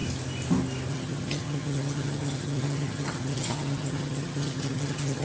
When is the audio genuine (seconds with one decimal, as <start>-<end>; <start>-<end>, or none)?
0.0-0.9